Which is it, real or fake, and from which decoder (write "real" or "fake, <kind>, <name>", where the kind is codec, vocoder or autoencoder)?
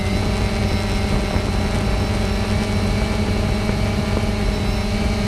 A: real